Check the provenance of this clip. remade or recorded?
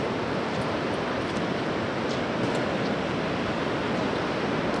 recorded